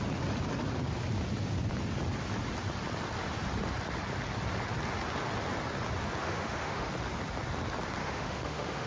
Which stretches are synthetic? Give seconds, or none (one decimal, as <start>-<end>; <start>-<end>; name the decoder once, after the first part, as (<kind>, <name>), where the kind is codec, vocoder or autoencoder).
6.2-6.9 (autoencoder, DAC-VAE); 8.0-8.9